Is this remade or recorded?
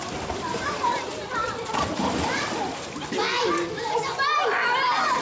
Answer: recorded